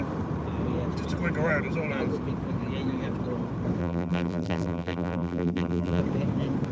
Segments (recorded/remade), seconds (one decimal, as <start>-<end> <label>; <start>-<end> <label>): 0.0-3.8 recorded; 3.8-6.0 remade; 6.0-6.7 recorded